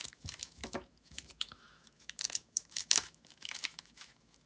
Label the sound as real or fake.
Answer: fake